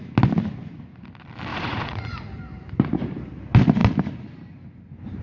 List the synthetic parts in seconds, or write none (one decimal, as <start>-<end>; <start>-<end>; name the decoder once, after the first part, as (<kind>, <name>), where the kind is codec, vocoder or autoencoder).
1.5-2.4 (vocoder, Vocos)